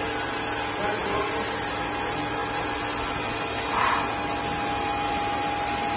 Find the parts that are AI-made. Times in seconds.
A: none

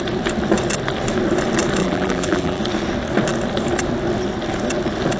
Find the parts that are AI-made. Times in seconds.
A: 1.8-2.6

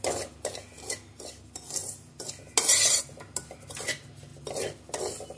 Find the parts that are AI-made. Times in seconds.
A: none

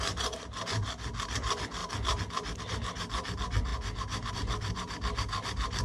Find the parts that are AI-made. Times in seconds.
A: none

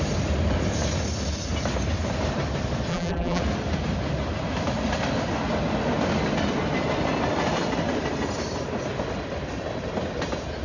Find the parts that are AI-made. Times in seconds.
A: 2.9-3.4

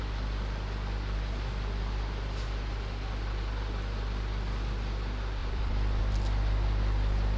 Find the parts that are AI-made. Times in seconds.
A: 5.4-6.0

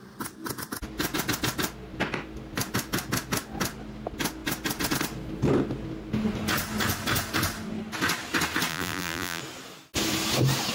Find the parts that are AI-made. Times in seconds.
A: 8.7-9.4

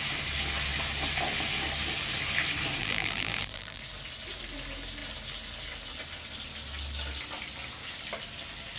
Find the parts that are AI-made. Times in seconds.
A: 2.8-3.8